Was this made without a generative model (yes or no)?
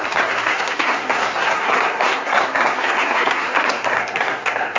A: no